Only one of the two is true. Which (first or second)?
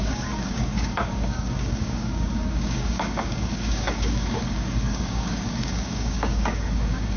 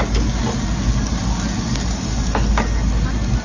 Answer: second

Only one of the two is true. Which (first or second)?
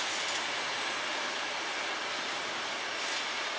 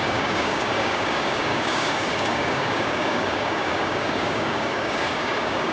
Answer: first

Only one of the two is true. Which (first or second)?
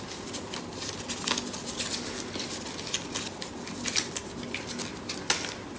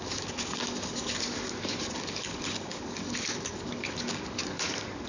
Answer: first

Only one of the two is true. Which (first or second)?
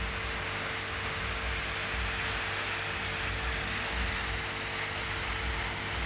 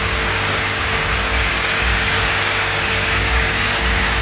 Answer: first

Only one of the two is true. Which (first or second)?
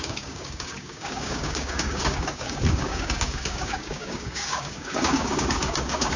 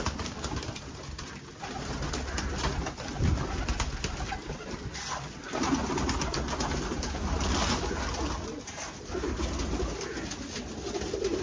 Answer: second